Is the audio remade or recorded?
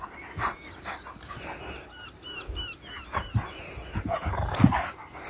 recorded